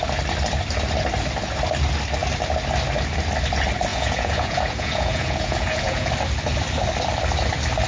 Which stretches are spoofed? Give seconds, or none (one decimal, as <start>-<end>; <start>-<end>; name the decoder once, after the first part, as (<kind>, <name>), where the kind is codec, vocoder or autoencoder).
3.9-6.1 (vocoder, Vocos)